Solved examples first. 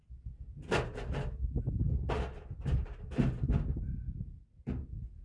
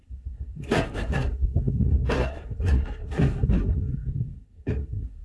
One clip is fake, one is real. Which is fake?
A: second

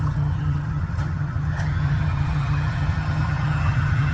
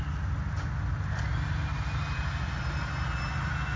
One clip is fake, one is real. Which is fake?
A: first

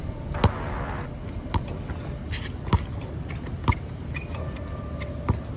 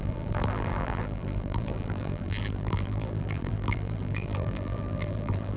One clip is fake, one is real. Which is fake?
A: second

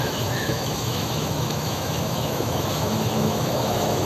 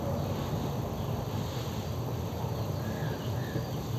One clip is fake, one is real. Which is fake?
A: first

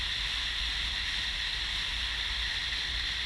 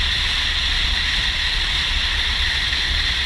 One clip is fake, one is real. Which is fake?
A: second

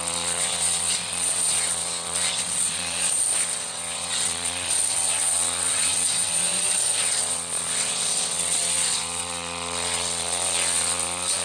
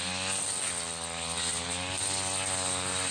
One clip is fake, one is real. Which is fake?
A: first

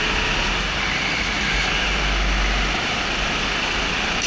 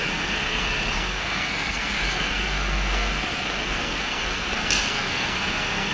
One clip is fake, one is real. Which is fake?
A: second